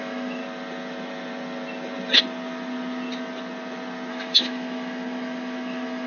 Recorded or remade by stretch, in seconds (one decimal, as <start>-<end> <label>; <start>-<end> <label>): 0.0-0.4 remade; 0.4-4.1 recorded; 4.1-6.1 remade